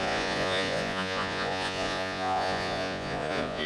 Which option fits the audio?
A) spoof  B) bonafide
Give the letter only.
A